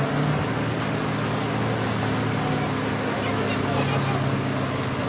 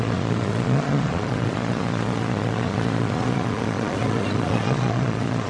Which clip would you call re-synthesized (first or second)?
second